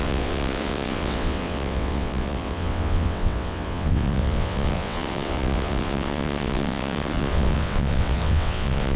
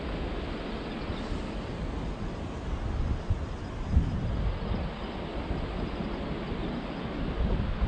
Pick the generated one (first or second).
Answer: first